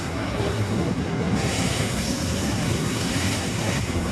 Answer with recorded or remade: remade